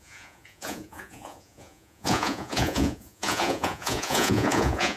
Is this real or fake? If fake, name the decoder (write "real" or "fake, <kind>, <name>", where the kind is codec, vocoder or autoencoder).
fake, vocoder, Vocos